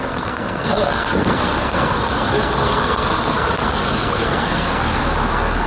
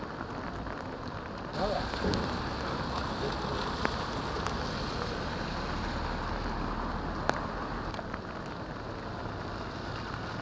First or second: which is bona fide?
second